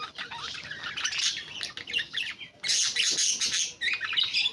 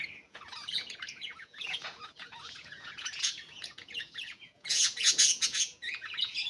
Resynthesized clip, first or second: second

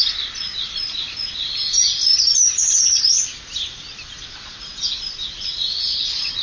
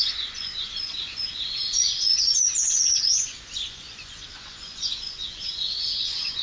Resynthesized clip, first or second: second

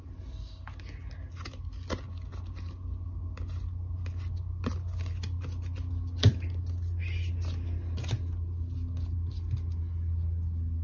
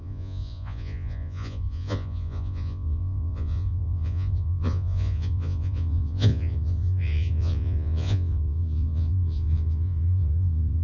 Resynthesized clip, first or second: second